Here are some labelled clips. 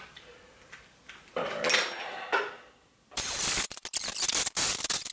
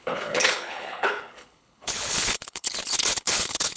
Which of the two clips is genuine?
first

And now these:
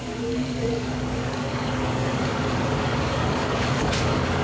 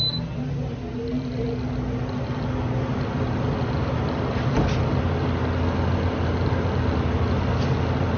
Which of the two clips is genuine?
second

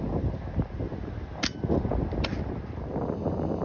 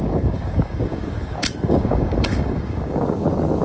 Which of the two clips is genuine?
first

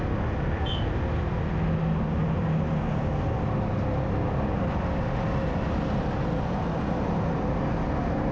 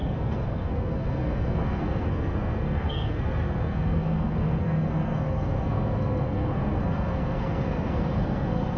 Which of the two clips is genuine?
first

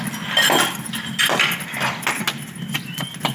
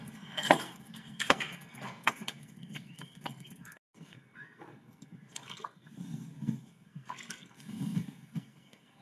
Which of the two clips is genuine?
first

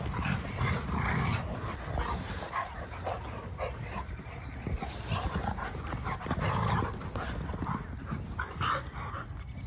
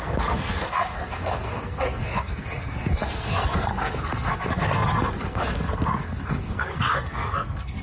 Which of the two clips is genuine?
first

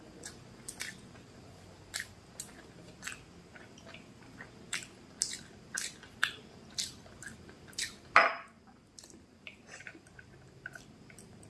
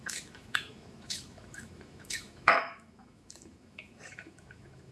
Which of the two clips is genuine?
first